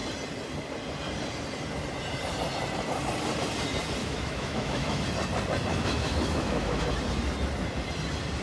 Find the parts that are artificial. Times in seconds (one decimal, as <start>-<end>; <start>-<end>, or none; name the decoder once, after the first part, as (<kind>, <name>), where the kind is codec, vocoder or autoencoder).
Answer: 4.0-5.0 (autoencoder, DAC-VAE); 5.7-6.8